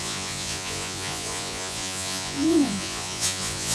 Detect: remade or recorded remade